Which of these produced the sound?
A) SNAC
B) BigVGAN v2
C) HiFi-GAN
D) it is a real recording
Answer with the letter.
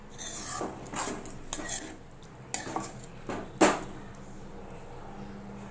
D